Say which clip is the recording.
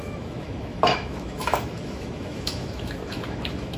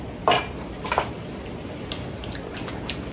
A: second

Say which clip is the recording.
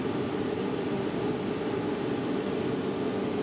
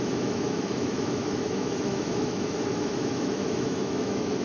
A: first